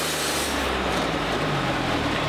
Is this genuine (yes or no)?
no